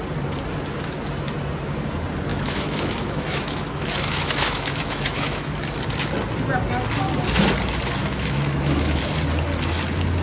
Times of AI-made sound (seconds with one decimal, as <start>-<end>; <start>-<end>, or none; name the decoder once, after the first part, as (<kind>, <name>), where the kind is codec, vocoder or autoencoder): 2.3-5.6 (autoencoder, DAC-VAE); 8.0-9.0